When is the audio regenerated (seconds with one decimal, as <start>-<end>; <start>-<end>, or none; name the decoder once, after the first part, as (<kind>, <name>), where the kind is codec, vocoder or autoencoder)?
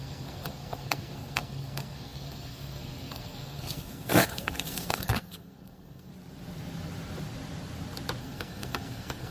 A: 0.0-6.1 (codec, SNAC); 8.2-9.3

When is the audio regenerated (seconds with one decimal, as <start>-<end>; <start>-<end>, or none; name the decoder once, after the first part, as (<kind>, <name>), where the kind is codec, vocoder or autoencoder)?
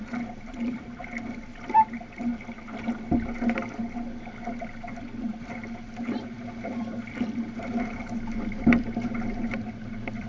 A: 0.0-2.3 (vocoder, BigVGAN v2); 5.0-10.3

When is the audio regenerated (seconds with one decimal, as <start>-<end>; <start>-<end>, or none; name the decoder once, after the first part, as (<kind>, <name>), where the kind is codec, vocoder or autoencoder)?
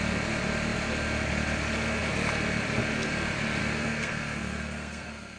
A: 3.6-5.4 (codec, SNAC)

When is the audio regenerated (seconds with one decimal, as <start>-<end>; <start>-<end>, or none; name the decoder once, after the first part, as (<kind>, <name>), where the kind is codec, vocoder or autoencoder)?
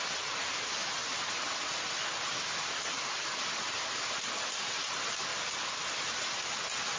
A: 5.3-6.6 (vocoder, BigVGAN v2)